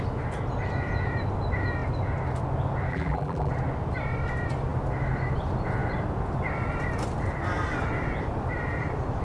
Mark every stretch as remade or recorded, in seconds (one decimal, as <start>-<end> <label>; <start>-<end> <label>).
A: 0.0-2.9 recorded; 2.9-3.5 remade; 3.5-9.2 recorded

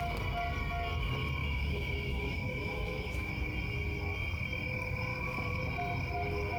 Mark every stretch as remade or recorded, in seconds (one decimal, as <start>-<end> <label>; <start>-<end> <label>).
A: 0.0-1.4 recorded; 1.4-3.3 remade; 3.3-5.1 recorded; 5.1-5.6 remade; 5.6-6.6 recorded

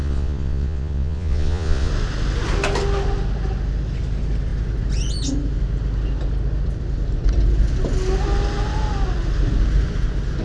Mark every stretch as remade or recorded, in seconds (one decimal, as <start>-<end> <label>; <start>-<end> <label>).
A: 0.0-1.9 remade; 1.9-10.4 recorded

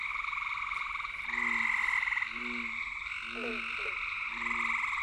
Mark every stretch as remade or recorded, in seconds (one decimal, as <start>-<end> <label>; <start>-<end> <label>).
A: 0.0-5.0 recorded

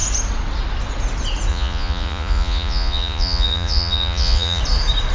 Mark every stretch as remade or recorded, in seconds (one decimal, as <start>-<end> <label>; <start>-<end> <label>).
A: 0.0-1.5 recorded; 1.5-4.6 remade; 4.6-5.1 recorded

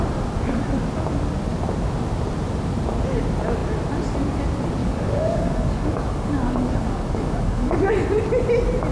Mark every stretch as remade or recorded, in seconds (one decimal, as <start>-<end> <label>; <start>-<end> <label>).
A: 0.0-4.8 recorded; 4.8-7.9 remade; 7.9-8.9 recorded

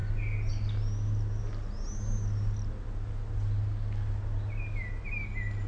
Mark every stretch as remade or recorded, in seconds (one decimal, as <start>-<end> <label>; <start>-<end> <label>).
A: 0.0-5.7 recorded

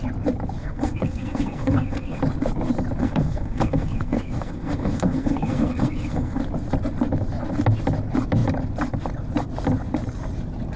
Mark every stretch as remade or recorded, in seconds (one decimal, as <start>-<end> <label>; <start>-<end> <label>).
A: 0.0-0.6 recorded; 0.6-2.2 remade; 2.2-3.0 recorded; 3.0-6.4 remade; 6.4-10.8 recorded